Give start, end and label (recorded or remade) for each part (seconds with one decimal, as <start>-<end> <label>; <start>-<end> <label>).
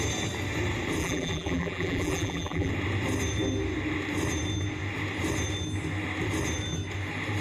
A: 0.0-1.0 recorded; 1.0-2.7 remade; 2.7-7.4 recorded